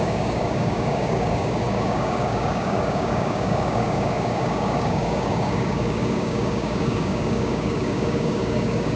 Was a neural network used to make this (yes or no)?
yes